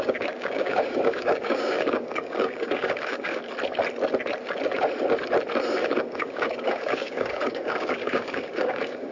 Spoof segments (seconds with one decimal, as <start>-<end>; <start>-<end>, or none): 0.0-3.4; 5.8-9.1